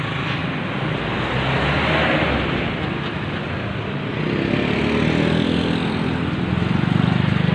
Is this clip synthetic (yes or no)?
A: no